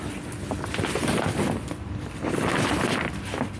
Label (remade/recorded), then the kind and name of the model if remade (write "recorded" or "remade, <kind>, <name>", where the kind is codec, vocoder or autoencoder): recorded